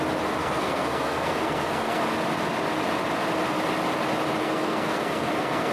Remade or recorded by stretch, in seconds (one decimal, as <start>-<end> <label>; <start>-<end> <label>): 0.0-0.4 recorded; 0.4-2.0 remade; 2.0-4.4 recorded; 4.4-5.7 remade